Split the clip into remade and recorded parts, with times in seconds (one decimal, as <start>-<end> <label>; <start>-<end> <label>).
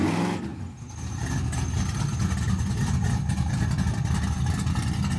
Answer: 0.0-5.2 recorded